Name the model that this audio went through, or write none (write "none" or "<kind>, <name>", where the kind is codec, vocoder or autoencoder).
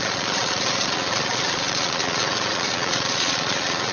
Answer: vocoder, Vocos